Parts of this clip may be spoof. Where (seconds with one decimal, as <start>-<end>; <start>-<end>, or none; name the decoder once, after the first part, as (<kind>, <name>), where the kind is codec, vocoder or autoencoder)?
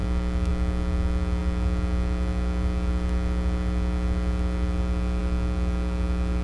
none